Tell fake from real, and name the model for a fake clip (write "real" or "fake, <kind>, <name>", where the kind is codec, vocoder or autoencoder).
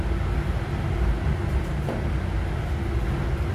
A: real